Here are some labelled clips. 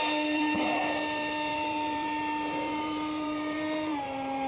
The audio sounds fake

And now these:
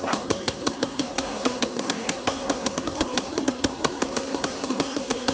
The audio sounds fake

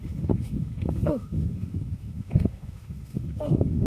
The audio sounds fake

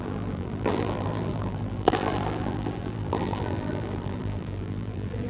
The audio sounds fake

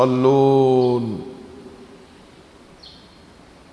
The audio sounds real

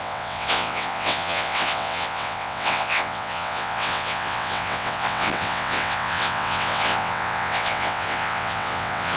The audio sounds fake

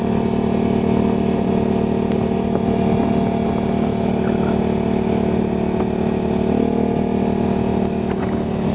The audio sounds real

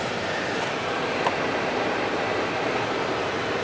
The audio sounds real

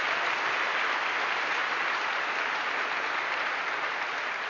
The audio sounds real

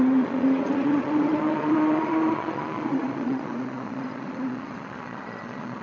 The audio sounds fake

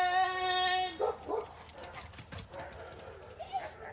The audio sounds real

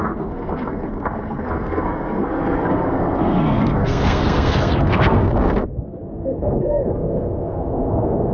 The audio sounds fake